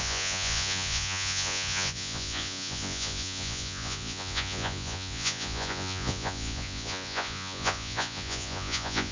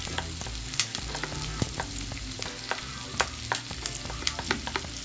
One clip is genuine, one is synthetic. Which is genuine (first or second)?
second